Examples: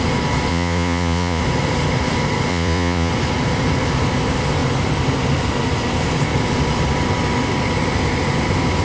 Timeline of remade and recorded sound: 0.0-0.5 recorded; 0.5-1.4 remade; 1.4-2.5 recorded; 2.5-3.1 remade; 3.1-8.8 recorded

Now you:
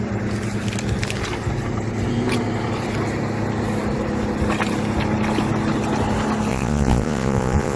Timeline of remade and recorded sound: 0.0-6.5 recorded; 6.5-7.8 remade

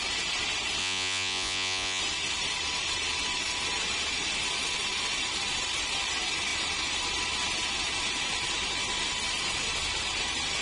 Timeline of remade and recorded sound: 0.0-0.8 recorded; 0.8-2.0 remade; 2.0-10.6 recorded